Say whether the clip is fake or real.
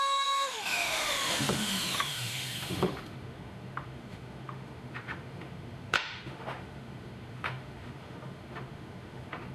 fake